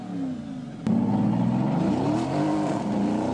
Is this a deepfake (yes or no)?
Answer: no